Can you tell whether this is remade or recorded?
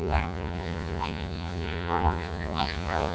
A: remade